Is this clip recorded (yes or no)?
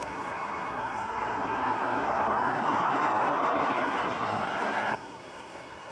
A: no